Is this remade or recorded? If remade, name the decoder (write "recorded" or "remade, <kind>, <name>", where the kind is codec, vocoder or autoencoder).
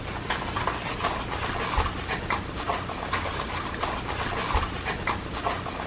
recorded